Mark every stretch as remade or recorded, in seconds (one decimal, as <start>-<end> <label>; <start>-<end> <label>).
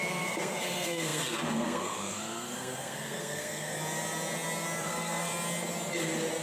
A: 0.0-3.7 remade; 3.7-4.8 recorded; 4.8-5.3 remade; 5.3-6.4 recorded